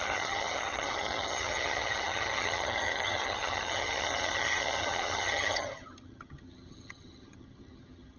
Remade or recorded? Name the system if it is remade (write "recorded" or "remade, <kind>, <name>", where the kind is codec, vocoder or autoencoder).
remade, vocoder, HiFi-GAN